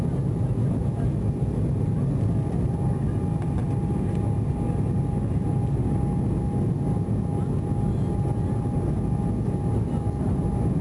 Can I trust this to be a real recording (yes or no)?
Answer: yes